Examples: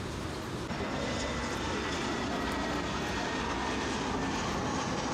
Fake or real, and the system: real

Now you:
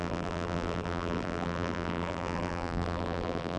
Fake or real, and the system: fake, vocoder, BigVGAN v2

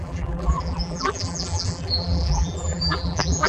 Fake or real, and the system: fake, vocoder, BigVGAN v2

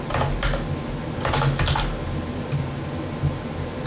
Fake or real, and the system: real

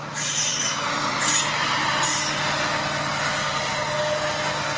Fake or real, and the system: real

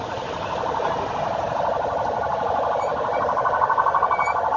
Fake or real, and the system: fake, vocoder, BigVGAN v2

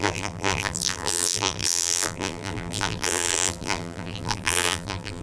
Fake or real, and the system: fake, vocoder, BigVGAN v2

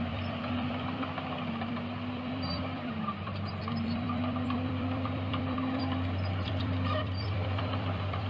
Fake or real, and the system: fake, vocoder, BigVGAN v2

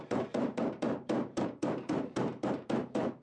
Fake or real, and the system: fake, vocoder, BigVGAN v2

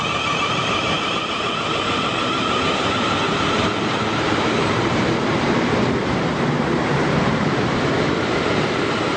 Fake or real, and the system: fake, vocoder, BigVGAN v2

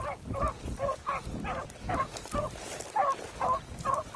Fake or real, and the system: real